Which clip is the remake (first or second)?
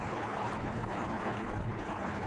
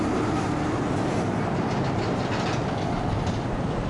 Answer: first